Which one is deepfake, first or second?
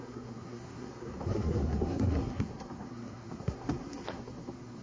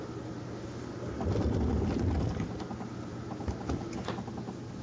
first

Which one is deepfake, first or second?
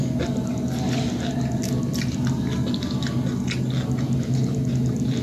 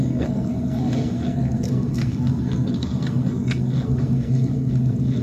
second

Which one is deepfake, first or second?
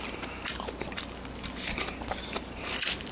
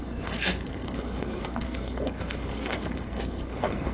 second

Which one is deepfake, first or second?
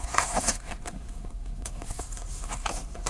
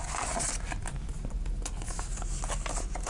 first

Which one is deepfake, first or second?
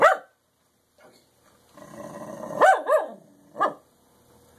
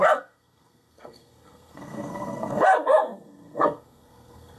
second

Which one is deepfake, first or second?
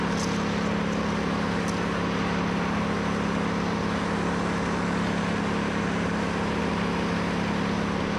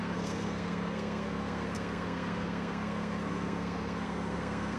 second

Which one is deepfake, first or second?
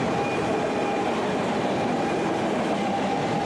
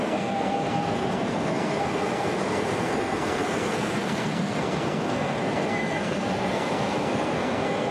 second